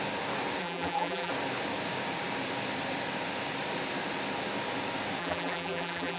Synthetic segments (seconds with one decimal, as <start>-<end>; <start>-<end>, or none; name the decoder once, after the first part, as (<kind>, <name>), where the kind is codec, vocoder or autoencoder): 0.6-1.3 (vocoder, BigVGAN v2); 5.2-6.2